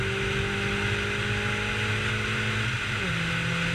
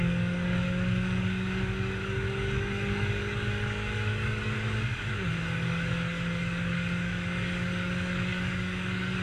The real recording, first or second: first